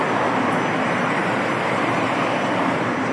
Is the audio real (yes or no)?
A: yes